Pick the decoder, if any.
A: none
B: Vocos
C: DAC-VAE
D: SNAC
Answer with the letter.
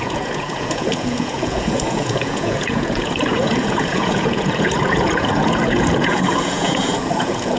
B